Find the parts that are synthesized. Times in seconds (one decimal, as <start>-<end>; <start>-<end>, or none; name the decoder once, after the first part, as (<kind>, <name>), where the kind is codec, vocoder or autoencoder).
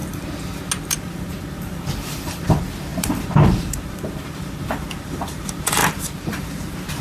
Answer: 0.8-7.0 (vocoder, BigVGAN v2)